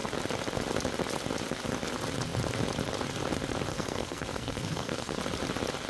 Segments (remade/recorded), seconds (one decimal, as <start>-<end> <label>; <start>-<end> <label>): 0.0-3.7 recorded; 3.7-5.2 remade; 5.2-5.9 recorded